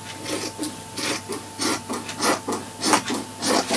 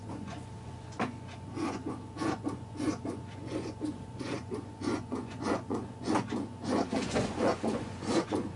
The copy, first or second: second